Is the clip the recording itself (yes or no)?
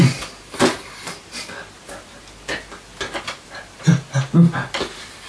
yes